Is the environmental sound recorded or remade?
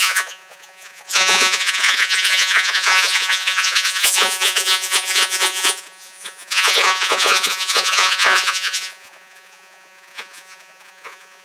remade